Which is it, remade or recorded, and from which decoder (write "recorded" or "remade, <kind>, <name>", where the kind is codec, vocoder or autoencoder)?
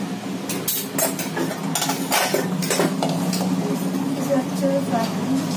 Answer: recorded